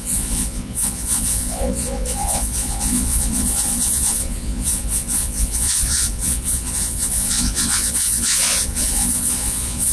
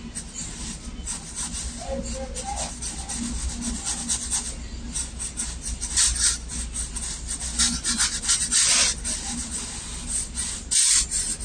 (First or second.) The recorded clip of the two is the second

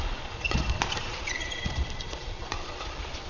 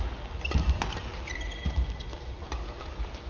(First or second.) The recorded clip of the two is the second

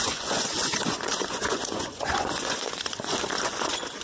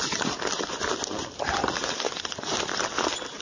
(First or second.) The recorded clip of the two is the second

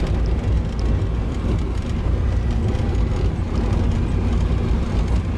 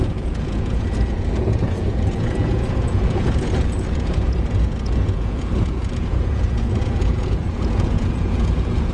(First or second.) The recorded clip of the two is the first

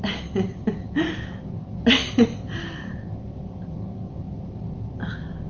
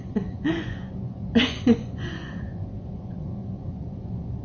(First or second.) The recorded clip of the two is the first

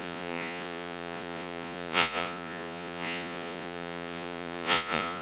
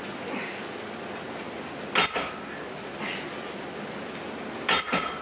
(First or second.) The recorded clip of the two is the second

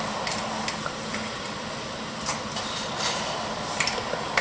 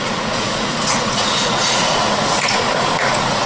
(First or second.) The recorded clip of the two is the first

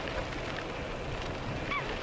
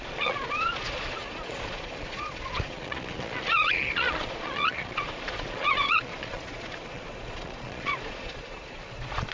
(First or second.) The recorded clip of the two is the first